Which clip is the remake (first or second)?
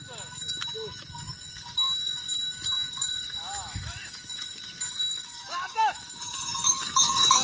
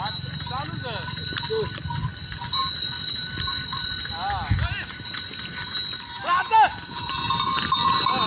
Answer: first